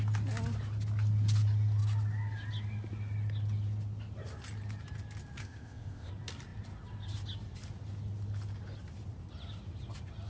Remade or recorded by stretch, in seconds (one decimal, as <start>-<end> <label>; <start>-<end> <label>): 0.0-5.4 recorded; 5.4-6.1 remade; 6.1-10.3 recorded